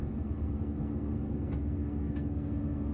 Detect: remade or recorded remade